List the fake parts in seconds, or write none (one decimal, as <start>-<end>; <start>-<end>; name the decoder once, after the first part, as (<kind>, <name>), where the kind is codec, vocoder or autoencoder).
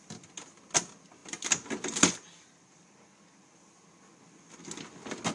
none